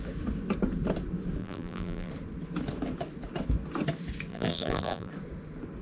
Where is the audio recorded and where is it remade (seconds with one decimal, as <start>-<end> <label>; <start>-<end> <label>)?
0.0-1.4 recorded; 1.4-2.1 remade; 2.1-4.3 recorded; 4.3-5.1 remade; 5.1-5.8 recorded